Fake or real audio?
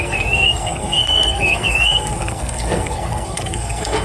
fake